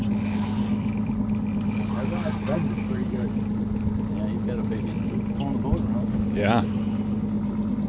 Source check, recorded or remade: recorded